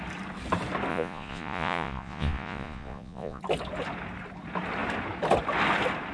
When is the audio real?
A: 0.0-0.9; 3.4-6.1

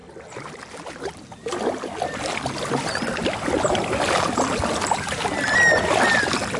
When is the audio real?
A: 0.0-6.6

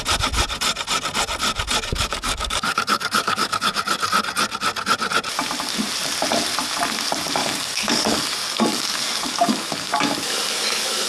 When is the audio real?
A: 0.0-1.9; 3.8-7.4

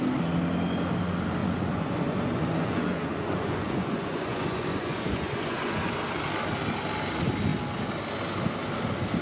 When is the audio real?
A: 0.0-1.4; 5.9-9.2

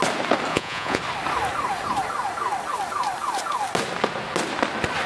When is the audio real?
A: 0.0-0.5; 1.0-5.1